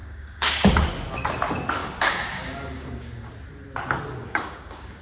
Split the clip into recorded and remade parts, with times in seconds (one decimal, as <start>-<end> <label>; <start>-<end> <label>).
0.0-0.7 remade; 0.7-1.8 recorded; 1.8-3.3 remade; 3.3-4.2 recorded; 4.2-5.0 remade